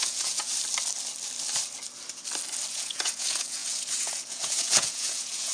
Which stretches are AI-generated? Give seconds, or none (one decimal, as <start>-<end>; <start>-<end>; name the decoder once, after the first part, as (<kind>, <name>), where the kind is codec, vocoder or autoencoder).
0.0-0.5 (vocoder, Vocos); 2.7-5.5

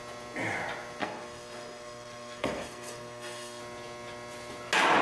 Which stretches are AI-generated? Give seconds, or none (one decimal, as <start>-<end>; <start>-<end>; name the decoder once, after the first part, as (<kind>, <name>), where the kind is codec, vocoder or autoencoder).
1.0-3.6 (codec, SNAC)

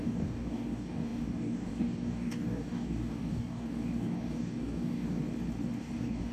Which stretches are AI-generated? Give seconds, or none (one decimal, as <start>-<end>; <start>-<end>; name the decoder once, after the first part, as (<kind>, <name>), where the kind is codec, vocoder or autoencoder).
0.0-5.2 (codec, DAC); 5.8-6.3

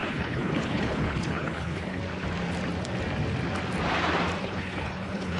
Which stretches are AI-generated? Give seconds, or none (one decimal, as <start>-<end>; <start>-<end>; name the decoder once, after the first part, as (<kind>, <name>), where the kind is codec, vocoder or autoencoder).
0.0-2.0 (codec, HILCodec); 4.4-5.4

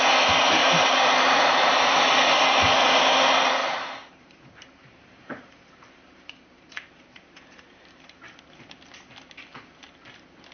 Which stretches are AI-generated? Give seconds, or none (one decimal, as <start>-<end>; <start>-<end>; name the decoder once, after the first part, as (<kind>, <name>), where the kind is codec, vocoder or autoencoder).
0.6-2.0 (vocoder, BigVGAN v2); 3.6-8.4